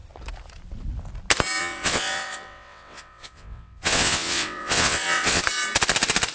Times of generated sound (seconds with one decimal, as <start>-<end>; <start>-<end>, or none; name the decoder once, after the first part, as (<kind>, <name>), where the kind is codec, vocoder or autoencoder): 1.6-5.4 (vocoder, WaveNeXt)